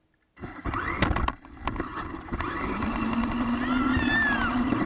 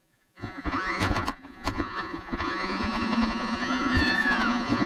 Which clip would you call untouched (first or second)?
first